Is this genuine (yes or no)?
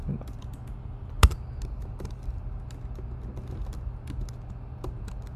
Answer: yes